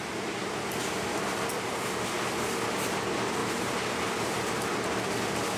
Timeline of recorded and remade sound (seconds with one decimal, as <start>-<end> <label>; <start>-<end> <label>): 0.0-3.4 recorded; 3.4-4.0 remade; 4.0-5.6 recorded